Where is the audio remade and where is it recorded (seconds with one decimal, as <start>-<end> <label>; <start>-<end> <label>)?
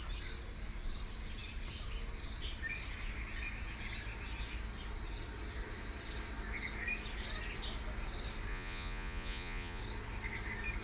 0.0-8.5 recorded; 8.5-9.8 remade; 9.8-10.8 recorded